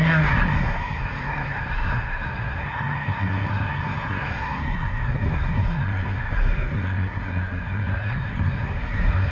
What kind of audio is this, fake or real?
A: fake